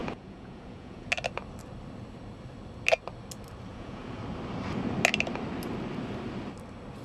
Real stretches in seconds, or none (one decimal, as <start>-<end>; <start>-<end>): 1.1-3.7; 4.2-7.0